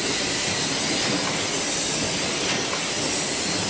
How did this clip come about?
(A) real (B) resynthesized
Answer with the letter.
A